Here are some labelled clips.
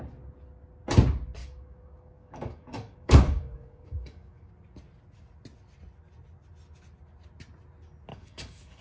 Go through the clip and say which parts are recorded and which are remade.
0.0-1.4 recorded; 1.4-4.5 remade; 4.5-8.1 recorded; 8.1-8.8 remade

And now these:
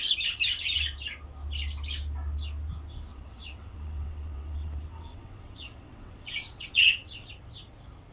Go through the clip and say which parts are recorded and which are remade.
0.0-3.1 recorded; 3.1-7.3 remade; 7.3-8.1 recorded

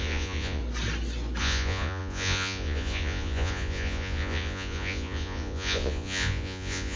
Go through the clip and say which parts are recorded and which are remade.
0.0-0.6 remade; 0.6-1.4 recorded; 1.4-7.0 remade

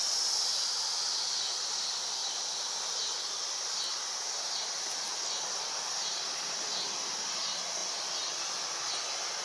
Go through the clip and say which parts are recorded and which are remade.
0.0-2.2 recorded; 2.2-2.8 remade; 2.8-7.8 recorded; 7.8-8.4 remade; 8.4-9.4 recorded